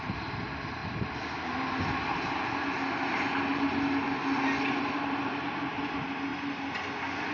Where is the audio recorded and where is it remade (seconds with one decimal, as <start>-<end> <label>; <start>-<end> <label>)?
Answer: 0.0-0.8 remade; 0.8-4.8 recorded; 4.8-6.3 remade; 6.3-7.3 recorded